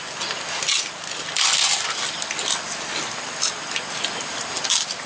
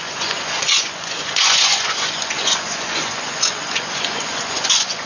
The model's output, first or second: second